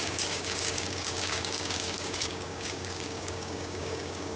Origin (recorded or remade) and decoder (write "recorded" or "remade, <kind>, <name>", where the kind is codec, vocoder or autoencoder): remade, codec, DAC